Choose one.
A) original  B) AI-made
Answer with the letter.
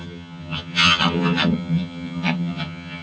B